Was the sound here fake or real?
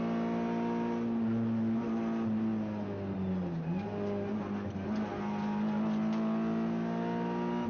real